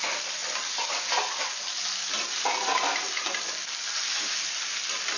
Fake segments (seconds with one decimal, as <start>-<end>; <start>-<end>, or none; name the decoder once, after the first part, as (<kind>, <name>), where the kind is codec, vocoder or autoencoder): none